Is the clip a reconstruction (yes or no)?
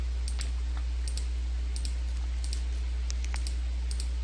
no